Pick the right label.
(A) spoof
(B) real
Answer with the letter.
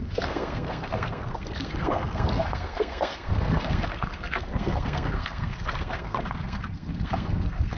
A